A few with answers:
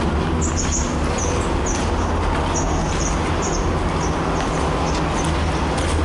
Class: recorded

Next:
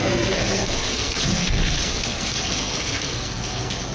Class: remade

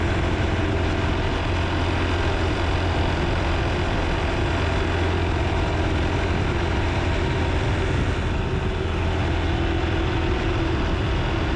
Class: recorded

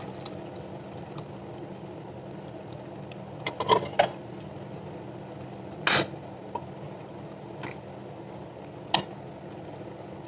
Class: recorded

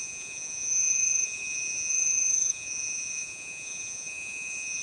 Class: remade